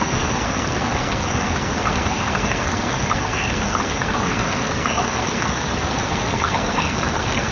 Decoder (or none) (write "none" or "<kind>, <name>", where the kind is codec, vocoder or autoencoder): codec, SNAC